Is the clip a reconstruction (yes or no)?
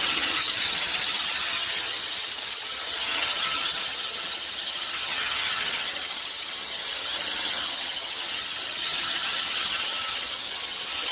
yes